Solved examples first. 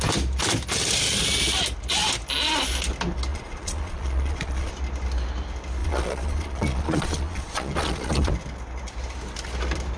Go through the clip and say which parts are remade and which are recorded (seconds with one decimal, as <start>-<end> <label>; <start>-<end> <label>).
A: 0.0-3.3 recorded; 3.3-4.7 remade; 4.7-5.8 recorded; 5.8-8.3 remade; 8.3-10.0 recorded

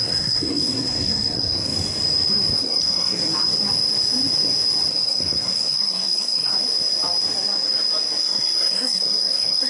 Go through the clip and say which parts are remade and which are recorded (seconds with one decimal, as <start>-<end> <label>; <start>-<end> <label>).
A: 0.0-1.7 remade; 1.7-2.6 recorded; 2.6-3.2 remade; 3.2-4.9 recorded; 4.9-6.5 remade; 6.5-8.2 recorded; 8.2-9.7 remade

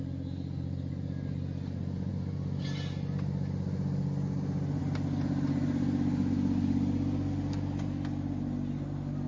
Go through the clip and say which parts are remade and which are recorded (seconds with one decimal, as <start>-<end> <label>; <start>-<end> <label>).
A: 0.0-9.3 recorded

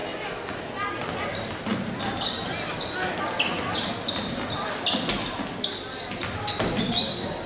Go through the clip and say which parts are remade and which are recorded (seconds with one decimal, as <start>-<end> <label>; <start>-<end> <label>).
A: 0.0-7.5 recorded